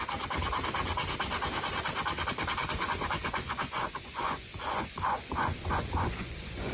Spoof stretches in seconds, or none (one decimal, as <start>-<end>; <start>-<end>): 2.6-6.7